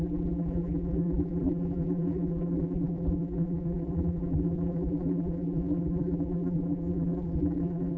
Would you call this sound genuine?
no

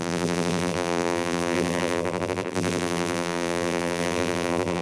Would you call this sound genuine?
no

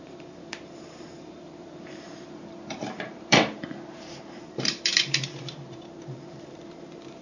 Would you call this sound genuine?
no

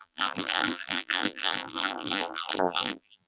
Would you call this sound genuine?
no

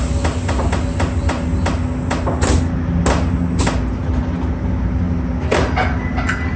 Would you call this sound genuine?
yes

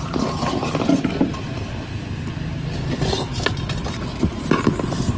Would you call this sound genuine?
yes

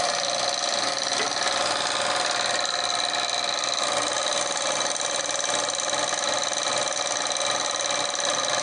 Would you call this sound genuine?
yes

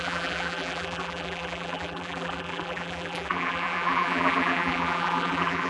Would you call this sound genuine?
no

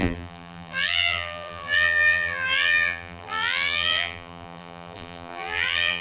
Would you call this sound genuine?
no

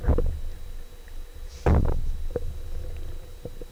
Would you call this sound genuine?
yes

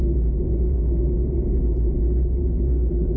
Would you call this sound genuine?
yes